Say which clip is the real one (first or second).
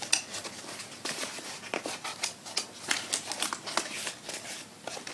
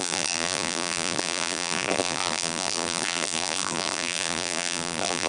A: first